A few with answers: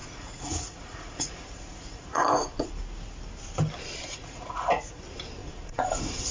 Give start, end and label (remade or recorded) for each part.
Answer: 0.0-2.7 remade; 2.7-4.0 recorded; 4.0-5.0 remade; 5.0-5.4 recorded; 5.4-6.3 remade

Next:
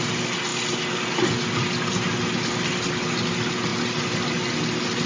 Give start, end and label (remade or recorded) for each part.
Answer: 0.0-5.1 recorded

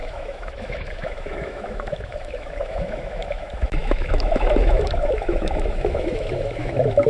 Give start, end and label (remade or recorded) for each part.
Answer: 0.0-7.1 remade

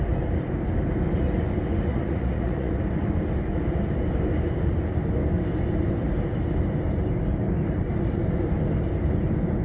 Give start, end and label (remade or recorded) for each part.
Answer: 0.0-1.9 recorded; 1.9-2.7 remade; 2.7-9.6 recorded